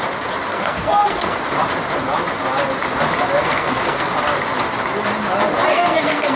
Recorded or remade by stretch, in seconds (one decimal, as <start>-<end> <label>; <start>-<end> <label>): 0.0-0.5 recorded; 0.5-1.4 remade; 1.4-3.4 recorded; 3.4-4.1 remade; 4.1-5.7 recorded; 5.7-6.4 remade